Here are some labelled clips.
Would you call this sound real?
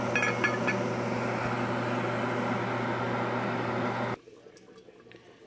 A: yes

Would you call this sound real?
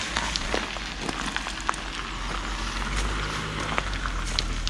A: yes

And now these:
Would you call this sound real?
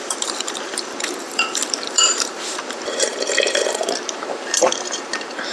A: no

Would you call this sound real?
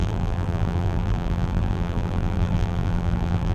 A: no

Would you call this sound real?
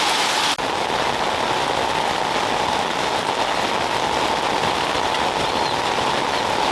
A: yes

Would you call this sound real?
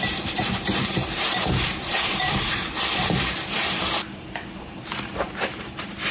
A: no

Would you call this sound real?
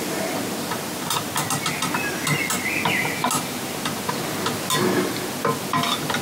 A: yes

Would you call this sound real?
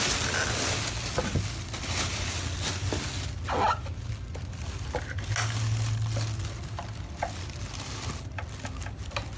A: yes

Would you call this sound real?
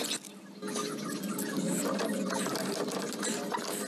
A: yes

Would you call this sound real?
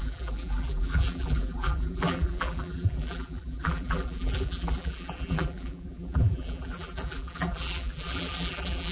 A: no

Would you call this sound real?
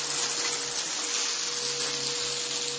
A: yes